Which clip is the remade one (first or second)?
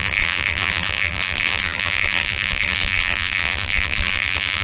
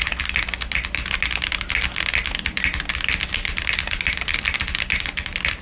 first